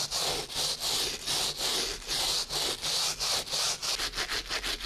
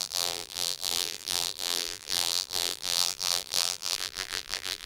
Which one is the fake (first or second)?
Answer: second